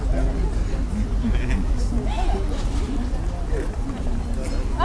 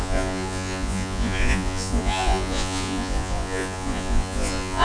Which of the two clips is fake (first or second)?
second